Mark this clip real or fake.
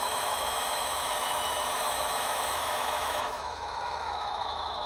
fake